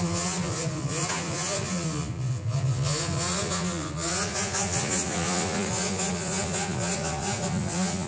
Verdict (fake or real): fake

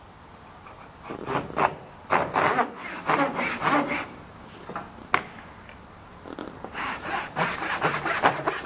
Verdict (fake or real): real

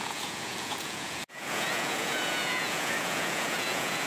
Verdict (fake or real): fake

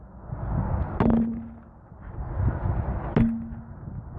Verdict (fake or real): real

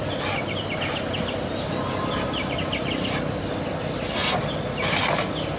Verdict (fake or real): real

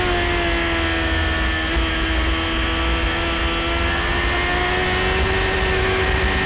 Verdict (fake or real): real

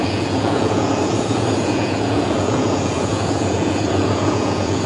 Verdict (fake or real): fake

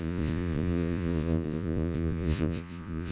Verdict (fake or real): fake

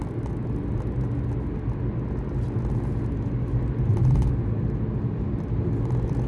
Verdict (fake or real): real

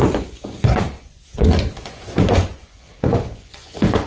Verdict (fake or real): fake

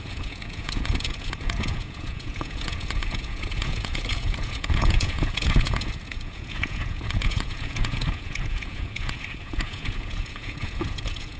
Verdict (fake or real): fake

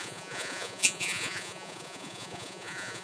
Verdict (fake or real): fake